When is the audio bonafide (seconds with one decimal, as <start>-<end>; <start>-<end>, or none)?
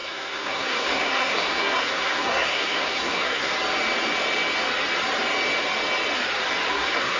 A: 3.5-6.7